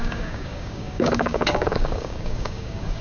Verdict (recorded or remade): remade